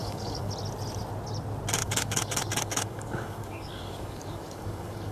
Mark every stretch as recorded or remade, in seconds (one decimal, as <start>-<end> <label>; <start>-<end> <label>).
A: 0.0-0.5 remade; 0.5-1.8 recorded; 1.8-5.1 remade